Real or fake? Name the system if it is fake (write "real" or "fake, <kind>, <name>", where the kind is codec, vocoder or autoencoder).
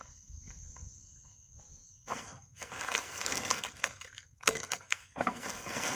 fake, codec, SNAC